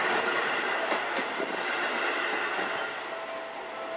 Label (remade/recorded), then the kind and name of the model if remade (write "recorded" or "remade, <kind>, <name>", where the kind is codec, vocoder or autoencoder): recorded